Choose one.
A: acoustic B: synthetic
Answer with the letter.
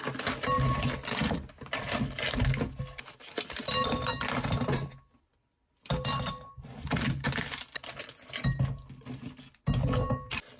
A